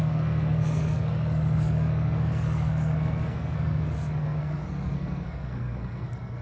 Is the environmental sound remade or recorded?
remade